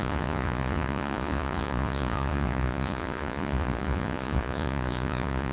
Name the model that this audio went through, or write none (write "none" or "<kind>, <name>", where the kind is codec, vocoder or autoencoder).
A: vocoder, Vocos